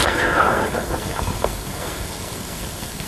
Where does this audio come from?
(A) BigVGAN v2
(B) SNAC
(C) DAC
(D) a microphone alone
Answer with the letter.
B